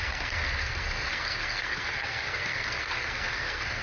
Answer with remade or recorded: remade